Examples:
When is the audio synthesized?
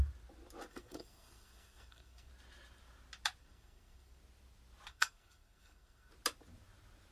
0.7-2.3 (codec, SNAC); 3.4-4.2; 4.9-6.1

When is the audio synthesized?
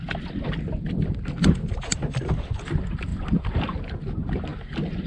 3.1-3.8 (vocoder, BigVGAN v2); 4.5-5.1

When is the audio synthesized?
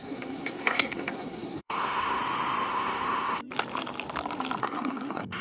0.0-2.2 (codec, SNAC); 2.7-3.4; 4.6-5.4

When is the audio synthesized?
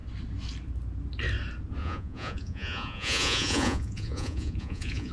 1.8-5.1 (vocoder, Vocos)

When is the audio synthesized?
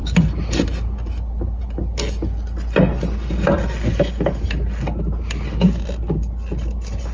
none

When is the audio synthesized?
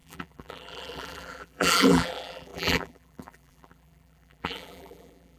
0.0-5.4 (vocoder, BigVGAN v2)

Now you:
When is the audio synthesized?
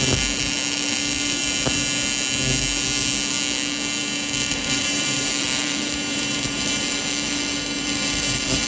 4.5-8.7 (vocoder, BigVGAN v2)